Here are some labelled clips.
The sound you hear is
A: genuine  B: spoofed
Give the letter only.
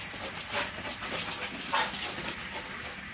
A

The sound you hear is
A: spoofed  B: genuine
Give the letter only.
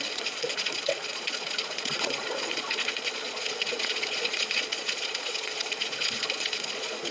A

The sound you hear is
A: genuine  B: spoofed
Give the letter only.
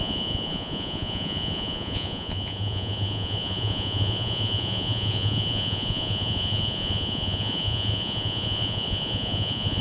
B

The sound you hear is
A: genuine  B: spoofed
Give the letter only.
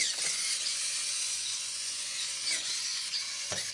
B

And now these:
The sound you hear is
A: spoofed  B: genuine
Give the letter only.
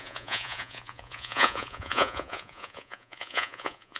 A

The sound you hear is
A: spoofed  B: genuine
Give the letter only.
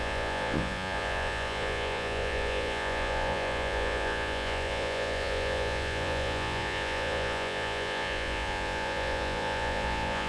A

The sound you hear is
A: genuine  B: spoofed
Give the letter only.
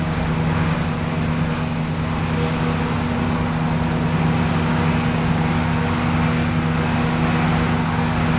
A